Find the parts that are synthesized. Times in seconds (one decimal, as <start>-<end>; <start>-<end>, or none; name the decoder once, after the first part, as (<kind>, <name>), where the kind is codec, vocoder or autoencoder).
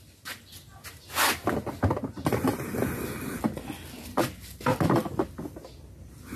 none